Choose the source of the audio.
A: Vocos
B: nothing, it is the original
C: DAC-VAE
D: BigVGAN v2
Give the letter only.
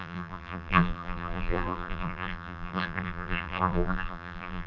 D